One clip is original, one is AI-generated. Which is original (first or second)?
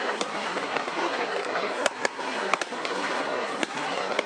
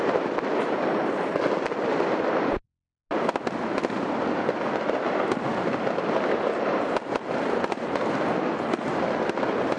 second